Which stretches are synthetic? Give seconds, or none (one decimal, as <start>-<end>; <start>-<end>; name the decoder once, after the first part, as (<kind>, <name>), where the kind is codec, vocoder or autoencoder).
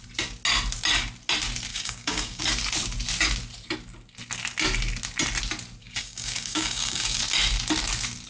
1.7-2.4 (codec, DAC); 5.8-7.2